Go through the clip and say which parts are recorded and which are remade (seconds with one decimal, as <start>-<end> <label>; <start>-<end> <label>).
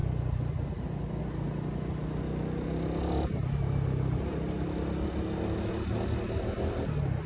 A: 0.0-7.3 recorded